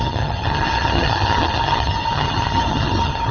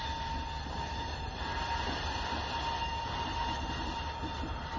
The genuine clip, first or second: second